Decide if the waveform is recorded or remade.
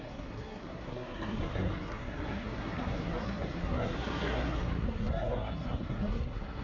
remade